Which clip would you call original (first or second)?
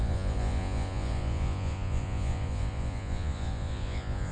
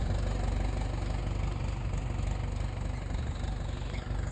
second